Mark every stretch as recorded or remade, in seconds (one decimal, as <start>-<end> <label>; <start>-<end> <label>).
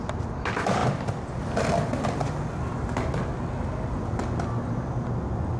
0.0-5.6 recorded